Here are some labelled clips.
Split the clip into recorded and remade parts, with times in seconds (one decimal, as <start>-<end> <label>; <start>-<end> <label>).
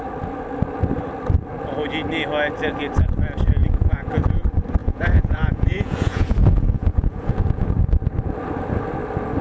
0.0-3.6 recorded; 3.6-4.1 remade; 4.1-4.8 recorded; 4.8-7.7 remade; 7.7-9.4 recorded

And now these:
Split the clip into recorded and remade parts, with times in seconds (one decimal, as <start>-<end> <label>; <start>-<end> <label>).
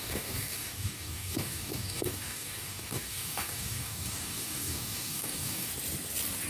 0.0-5.7 remade; 5.7-6.5 recorded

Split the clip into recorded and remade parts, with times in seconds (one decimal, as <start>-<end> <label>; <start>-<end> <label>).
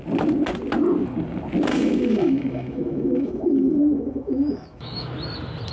0.0-1.7 recorded; 1.7-5.1 remade; 5.1-5.7 recorded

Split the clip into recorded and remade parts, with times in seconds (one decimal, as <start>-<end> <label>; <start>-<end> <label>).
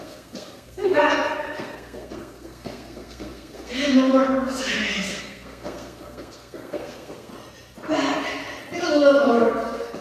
0.0-7.3 remade; 7.3-8.9 recorded; 8.9-10.0 remade